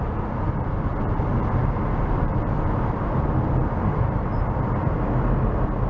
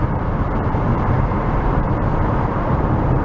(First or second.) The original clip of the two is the first